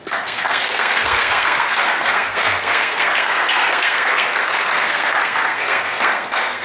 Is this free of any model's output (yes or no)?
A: no